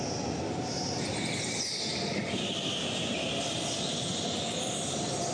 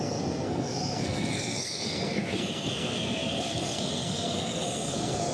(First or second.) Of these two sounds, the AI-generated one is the second